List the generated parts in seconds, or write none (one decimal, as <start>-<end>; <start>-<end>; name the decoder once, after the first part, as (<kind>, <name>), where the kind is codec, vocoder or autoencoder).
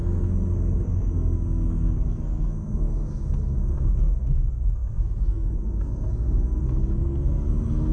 0.0-7.9 (codec, SNAC)